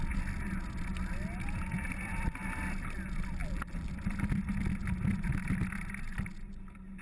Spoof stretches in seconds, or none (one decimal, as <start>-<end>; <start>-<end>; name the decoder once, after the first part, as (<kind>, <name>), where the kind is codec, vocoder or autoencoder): 3.4-3.9 (vocoder, BigVGAN v2)